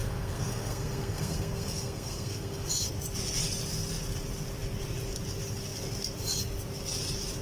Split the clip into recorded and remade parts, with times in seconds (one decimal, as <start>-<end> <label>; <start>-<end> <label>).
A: 0.0-2.7 remade; 2.7-7.4 recorded